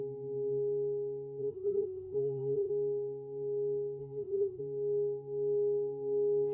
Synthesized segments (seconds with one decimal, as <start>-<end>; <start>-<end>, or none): 1.4-2.7; 4.0-4.6